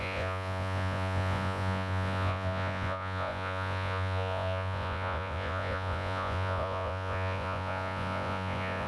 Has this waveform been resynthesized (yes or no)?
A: yes